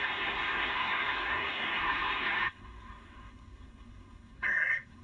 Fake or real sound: fake